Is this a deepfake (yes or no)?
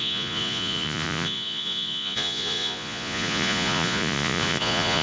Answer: yes